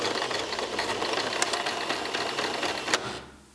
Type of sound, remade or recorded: recorded